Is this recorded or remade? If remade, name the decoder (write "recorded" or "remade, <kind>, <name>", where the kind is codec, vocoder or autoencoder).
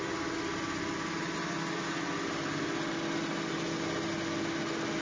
recorded